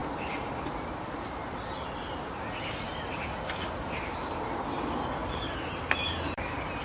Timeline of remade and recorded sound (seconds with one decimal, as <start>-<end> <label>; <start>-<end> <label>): 0.0-1.4 remade; 1.4-4.4 recorded; 4.4-6.8 remade